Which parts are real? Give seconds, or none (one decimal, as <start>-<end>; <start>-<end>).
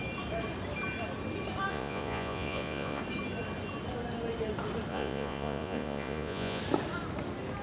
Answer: 0.0-1.7; 3.0-4.9; 6.6-7.6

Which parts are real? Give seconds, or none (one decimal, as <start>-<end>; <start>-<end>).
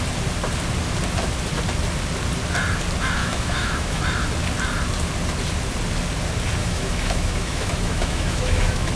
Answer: 0.0-3.2; 4.0-6.6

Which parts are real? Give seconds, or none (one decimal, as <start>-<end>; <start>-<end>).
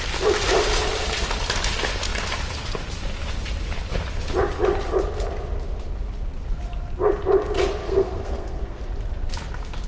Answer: 0.0-7.8; 8.8-9.9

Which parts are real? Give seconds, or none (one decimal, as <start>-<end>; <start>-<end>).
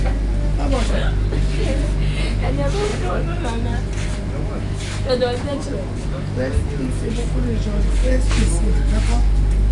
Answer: 0.0-9.7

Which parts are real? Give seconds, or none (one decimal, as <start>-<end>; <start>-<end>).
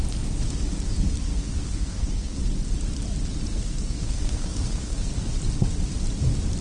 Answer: 0.0-1.3; 2.4-3.5; 5.1-6.6